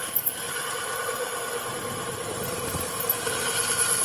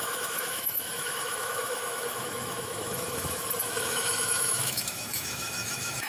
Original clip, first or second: first